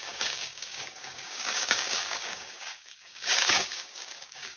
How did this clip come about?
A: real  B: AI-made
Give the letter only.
B